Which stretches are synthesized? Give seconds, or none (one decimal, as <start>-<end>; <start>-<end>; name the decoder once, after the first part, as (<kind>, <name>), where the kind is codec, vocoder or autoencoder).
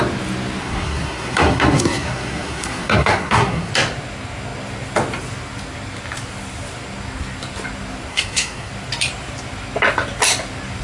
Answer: 0.6-3.7 (codec, SNAC); 8.1-8.7